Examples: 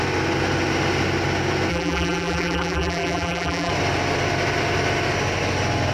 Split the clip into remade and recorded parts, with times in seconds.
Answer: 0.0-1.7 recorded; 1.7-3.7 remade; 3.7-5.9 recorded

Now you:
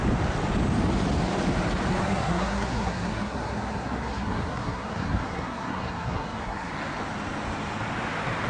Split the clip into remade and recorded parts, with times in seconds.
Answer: 0.0-2.0 recorded; 2.0-6.7 remade; 6.7-8.5 recorded

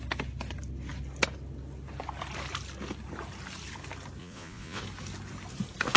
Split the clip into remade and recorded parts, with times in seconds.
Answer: 0.0-4.2 recorded; 4.2-4.8 remade; 4.8-6.0 recorded